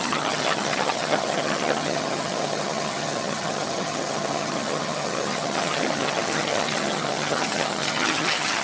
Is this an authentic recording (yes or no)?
no